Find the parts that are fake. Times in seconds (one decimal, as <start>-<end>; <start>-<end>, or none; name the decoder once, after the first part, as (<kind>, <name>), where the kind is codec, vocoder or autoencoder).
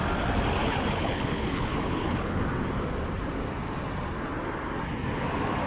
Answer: 0.6-2.4 (codec, HILCodec)